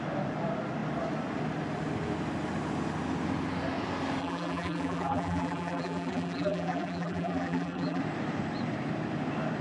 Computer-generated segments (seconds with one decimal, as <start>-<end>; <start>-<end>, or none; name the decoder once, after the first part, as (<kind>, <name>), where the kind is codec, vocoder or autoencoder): 4.2-8.0 (vocoder, BigVGAN v2)